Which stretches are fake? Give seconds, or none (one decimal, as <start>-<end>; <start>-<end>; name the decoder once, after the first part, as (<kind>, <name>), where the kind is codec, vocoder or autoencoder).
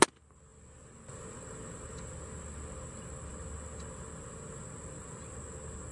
none